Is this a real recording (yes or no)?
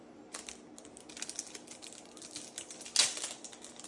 yes